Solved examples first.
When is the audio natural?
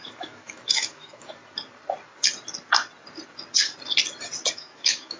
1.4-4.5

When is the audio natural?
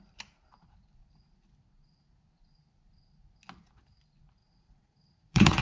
0.0-4.4